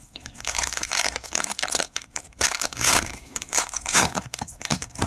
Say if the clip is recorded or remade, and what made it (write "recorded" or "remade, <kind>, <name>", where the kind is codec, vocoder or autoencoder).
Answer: remade, codec, SNAC